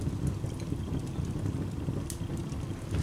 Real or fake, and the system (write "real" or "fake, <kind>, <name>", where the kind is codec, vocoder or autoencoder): real